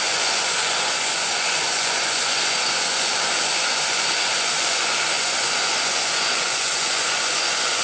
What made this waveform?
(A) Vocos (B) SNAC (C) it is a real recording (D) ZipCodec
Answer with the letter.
A